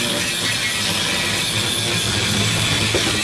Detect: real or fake real